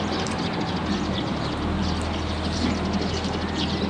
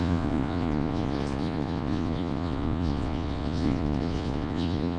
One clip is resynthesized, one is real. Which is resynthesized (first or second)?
second